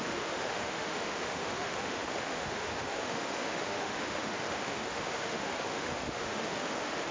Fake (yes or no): yes